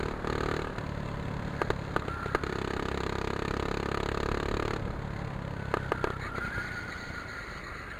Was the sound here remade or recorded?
recorded